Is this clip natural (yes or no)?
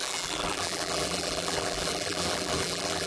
no